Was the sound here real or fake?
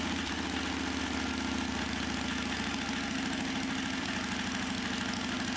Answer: real